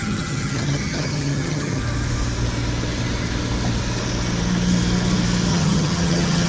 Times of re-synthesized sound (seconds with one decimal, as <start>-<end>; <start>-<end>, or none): 0.0-1.8; 5.5-6.5